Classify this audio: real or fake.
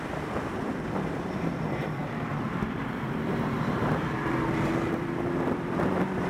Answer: fake